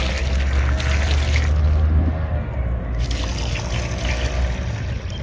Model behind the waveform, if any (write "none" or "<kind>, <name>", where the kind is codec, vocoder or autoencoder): none